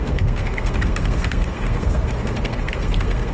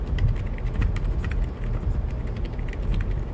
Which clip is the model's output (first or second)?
first